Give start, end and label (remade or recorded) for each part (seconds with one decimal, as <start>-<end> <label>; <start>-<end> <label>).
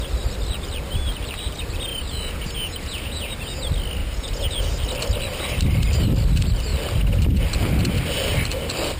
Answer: 0.0-1.9 recorded; 1.9-3.3 remade; 3.3-4.0 recorded; 4.0-4.6 remade; 4.6-9.0 recorded